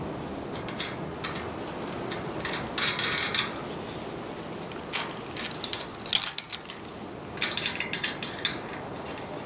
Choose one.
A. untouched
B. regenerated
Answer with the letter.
A